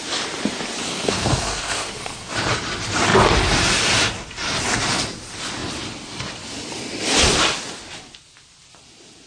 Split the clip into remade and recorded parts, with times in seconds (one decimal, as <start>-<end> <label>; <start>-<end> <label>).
0.0-0.9 recorded; 0.9-2.3 remade; 2.3-9.3 recorded